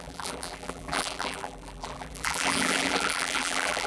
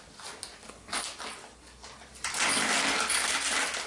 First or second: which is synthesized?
first